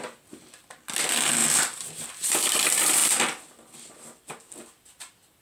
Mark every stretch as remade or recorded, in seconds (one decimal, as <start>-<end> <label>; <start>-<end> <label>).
0.0-1.4 recorded; 1.4-2.1 remade; 2.1-3.0 recorded; 3.0-5.0 remade; 5.0-5.4 recorded